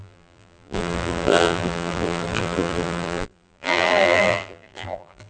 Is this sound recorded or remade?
remade